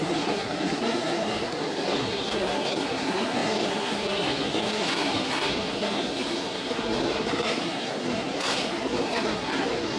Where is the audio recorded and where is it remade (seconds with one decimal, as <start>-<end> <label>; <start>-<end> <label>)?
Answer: 0.0-10.0 remade